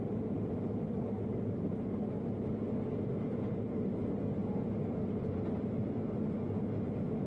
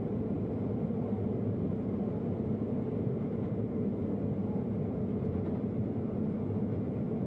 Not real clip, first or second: second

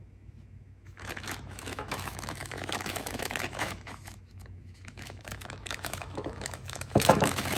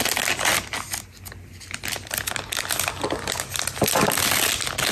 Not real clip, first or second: first